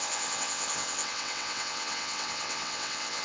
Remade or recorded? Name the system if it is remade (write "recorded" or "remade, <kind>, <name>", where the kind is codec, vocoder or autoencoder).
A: remade, vocoder, WaveNeXt